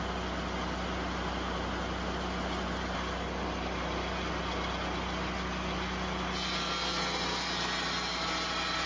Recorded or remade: recorded